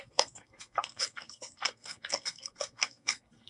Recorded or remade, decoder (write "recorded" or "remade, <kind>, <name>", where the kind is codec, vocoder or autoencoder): remade, codec, SNAC